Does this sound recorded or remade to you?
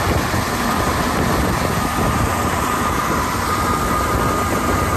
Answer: recorded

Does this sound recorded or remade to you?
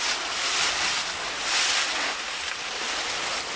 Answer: recorded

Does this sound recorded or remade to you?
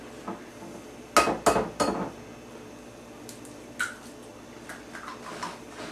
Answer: recorded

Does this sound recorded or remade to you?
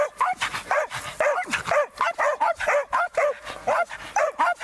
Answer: recorded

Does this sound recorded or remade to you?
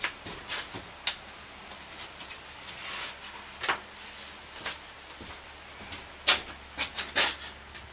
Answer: recorded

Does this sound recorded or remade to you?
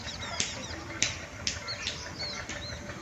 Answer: recorded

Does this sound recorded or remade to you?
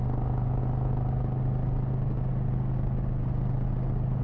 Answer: recorded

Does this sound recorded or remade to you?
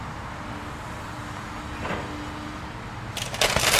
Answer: recorded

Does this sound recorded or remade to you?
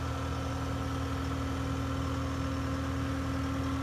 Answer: recorded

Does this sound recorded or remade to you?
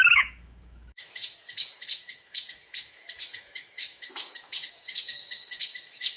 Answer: remade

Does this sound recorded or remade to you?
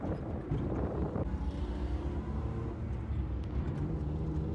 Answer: recorded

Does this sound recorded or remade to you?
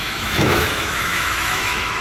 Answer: remade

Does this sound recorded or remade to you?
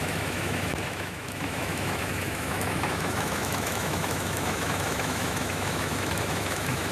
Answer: remade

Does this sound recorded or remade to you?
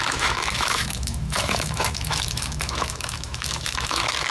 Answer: remade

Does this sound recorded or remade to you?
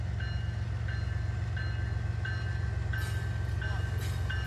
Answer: recorded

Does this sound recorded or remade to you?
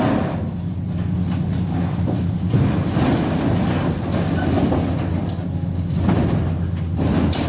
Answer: recorded